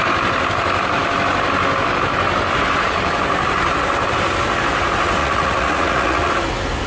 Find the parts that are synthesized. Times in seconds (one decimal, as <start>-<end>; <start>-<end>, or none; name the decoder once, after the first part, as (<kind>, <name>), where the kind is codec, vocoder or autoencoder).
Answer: 5.2-6.3 (vocoder, Vocos)